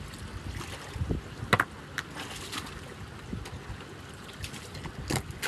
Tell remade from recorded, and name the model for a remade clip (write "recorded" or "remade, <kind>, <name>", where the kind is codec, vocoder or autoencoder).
recorded